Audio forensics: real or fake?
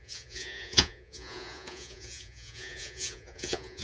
fake